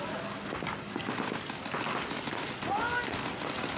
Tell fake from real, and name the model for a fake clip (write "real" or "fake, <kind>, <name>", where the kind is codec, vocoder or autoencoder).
real